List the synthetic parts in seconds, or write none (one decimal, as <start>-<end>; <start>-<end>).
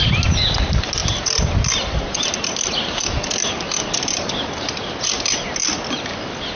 none